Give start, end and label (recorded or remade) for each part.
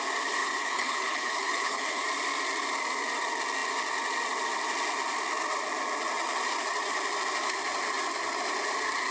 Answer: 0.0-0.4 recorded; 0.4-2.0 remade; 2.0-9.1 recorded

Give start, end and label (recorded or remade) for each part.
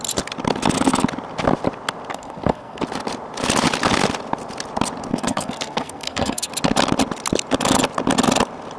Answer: 0.0-2.1 recorded; 2.1-2.8 remade; 2.8-5.1 recorded; 5.1-6.5 remade; 6.5-8.8 recorded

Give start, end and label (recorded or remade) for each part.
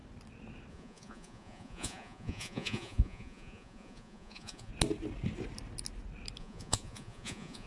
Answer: 0.0-0.7 recorded; 0.7-4.7 remade; 4.7-6.4 recorded; 6.4-7.7 remade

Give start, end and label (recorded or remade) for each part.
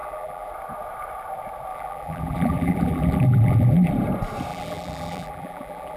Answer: 0.0-0.5 remade; 0.5-1.7 recorded; 1.7-3.9 remade; 3.9-4.5 recorded; 4.5-6.0 remade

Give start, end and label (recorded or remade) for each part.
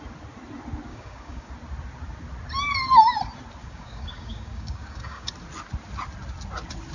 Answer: 0.0-0.9 recorded; 0.9-1.5 remade; 1.5-3.6 recorded; 3.6-5.3 remade; 5.3-6.9 recorded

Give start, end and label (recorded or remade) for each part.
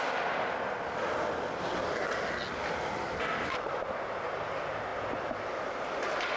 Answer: 0.0-6.4 recorded